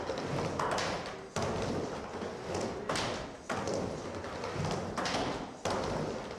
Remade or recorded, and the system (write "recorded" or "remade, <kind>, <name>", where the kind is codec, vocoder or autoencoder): recorded